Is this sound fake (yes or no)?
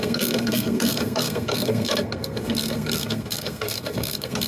yes